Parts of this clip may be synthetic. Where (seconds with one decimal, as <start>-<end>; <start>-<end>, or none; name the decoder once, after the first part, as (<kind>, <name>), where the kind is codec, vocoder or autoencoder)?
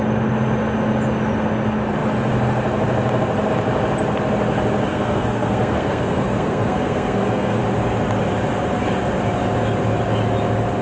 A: 4.9-7.6 (codec, SNAC)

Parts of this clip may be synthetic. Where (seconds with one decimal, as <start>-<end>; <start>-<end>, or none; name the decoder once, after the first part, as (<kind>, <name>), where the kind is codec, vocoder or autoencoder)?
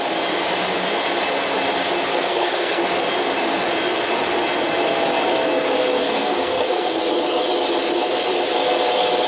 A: 2.1-2.8 (codec, SNAC); 6.0-7.0